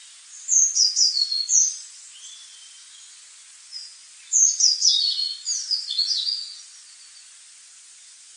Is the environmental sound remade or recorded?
remade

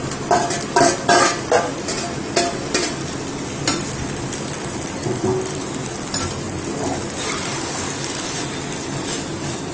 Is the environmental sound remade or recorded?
recorded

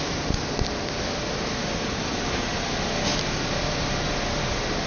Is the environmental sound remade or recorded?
recorded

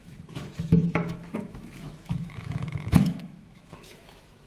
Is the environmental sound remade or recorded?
remade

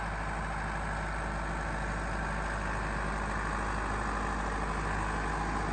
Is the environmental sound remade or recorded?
recorded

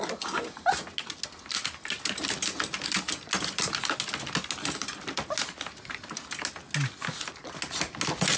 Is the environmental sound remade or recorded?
recorded